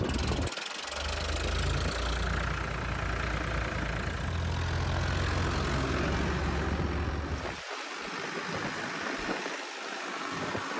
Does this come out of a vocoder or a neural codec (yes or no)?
no